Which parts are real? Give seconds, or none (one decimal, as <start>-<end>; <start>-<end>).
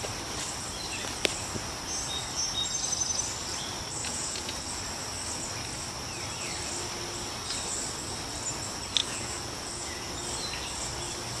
0.0-4.0; 4.8-9.0; 10.1-11.4